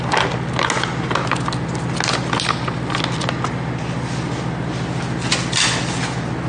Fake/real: real